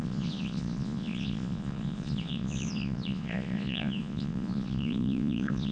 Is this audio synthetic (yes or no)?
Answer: yes